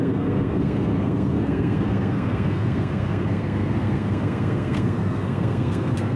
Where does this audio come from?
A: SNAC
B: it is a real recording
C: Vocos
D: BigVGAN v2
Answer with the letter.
A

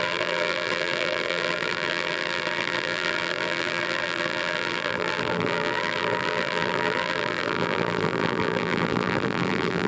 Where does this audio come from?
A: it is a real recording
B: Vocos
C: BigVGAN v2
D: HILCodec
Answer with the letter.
C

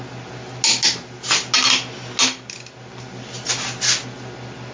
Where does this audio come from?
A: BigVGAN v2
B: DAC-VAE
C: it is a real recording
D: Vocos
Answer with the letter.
C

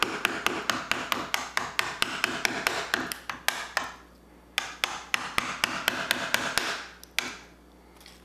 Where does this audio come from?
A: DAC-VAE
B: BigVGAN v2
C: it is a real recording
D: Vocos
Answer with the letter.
C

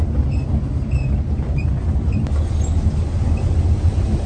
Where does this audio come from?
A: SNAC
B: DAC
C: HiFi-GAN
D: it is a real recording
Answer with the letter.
D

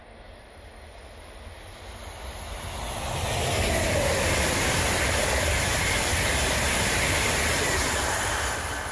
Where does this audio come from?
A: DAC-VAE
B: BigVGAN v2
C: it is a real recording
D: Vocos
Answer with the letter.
C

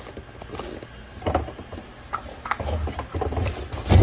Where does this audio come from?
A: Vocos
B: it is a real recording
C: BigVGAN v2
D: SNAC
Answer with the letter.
B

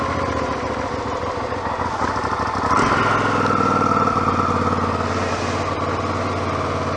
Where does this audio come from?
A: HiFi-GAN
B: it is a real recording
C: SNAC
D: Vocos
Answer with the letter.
B